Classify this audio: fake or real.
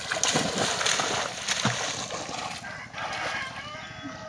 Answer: real